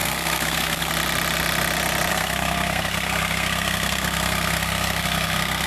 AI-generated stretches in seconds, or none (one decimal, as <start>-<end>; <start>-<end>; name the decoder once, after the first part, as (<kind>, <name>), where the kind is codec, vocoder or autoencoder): 0.0-0.9 (codec, SNAC); 2.1-5.7